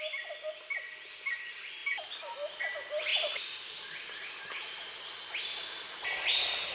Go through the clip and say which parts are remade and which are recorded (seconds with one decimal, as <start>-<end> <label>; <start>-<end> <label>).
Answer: 0.0-6.7 recorded